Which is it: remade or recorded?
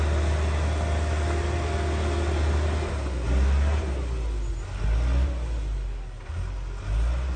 recorded